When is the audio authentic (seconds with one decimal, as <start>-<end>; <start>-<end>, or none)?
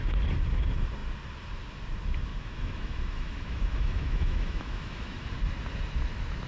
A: 0.0-2.3; 5.3-6.5